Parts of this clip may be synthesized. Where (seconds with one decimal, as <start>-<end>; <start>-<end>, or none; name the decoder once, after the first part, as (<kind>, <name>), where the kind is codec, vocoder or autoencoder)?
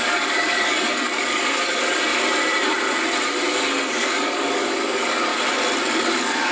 0.0-2.1 (codec, DAC); 4.0-5.3; 5.8-6.5